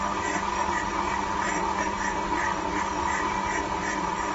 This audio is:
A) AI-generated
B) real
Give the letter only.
B